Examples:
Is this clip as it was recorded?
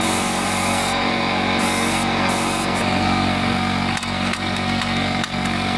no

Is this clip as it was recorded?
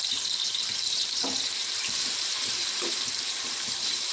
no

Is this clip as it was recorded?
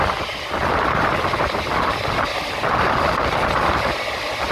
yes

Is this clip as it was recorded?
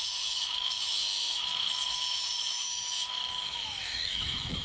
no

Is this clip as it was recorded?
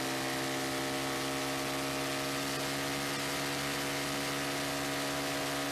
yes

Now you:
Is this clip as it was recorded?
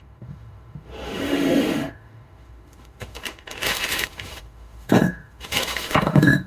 no